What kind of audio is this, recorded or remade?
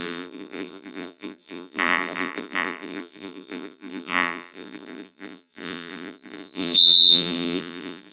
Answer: remade